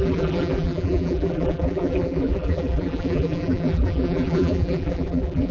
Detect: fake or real fake